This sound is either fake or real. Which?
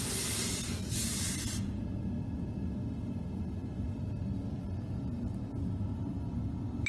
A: real